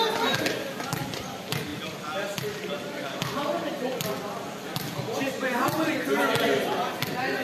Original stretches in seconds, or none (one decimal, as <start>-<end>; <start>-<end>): 0.0-7.4